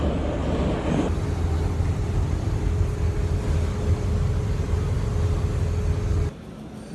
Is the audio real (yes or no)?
yes